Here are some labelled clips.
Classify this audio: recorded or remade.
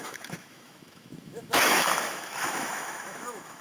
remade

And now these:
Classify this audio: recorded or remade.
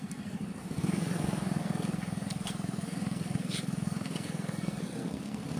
remade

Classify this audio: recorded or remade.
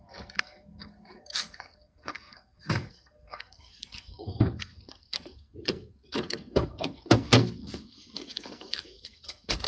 remade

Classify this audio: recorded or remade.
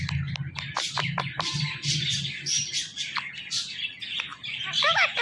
recorded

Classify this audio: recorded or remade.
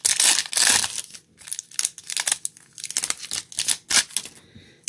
recorded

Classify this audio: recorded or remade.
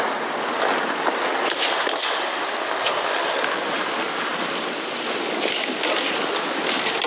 recorded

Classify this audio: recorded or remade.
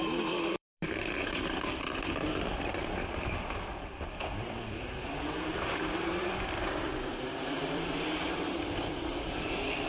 remade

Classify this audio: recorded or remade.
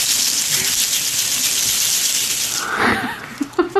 recorded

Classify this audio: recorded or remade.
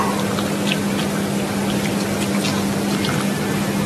recorded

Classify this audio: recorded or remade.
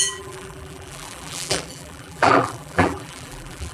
remade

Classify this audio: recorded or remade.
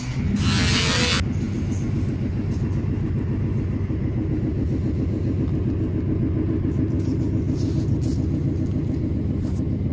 recorded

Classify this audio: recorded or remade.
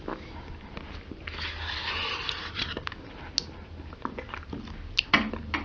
recorded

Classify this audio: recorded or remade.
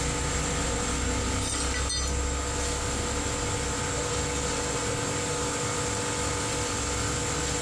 recorded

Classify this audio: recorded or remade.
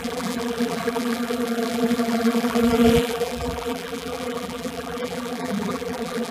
remade